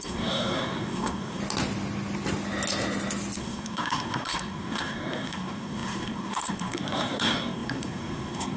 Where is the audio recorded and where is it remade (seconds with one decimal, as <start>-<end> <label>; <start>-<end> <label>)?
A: 0.0-1.4 remade; 1.4-3.4 recorded; 3.4-8.6 remade